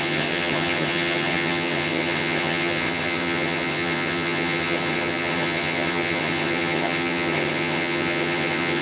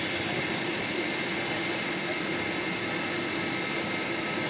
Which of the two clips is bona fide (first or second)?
second